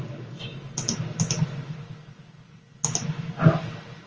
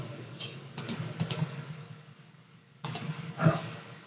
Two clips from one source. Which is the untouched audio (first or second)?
first